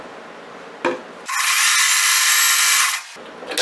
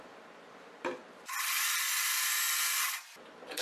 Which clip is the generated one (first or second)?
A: second